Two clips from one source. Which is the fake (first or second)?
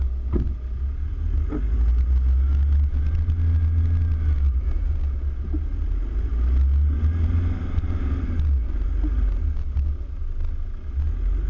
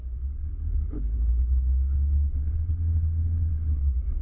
second